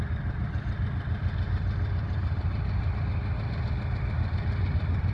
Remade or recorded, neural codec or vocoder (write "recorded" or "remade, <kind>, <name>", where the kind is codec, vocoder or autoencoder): recorded